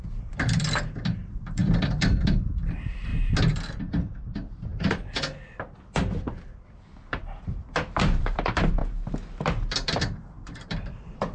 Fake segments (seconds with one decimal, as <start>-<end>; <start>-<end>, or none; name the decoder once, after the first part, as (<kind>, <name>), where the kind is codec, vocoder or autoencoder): 0.0-3.1 (vocoder, BigVGAN v2); 3.8-4.7; 8.2-8.8; 9.4-11.3